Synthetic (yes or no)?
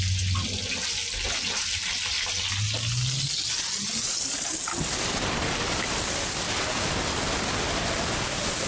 no